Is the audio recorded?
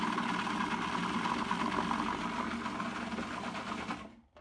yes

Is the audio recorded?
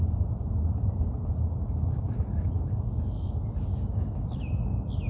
yes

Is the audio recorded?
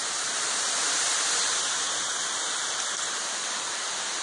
no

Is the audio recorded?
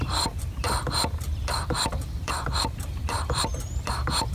no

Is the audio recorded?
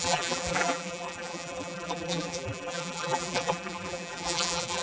no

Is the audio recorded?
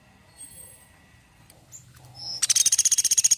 yes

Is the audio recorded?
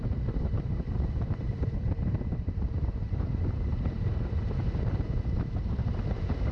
no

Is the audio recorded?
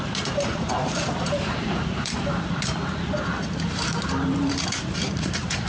no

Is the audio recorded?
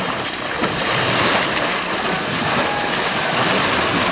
yes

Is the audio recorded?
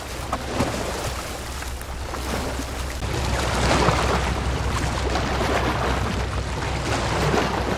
yes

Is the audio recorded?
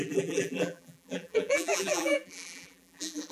no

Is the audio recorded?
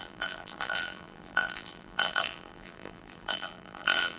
no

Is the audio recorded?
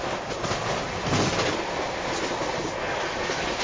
yes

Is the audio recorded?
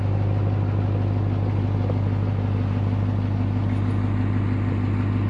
yes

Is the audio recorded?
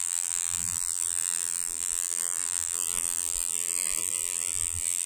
no